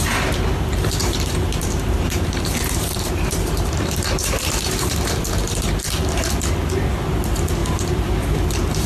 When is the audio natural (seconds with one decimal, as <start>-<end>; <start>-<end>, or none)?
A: 0.0-1.0; 5.7-7.6; 8.1-8.9